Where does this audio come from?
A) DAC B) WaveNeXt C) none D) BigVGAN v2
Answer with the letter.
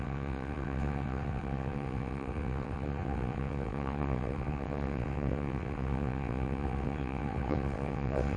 B